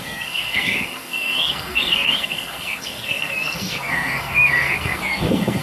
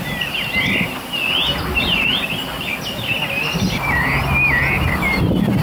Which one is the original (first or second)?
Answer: second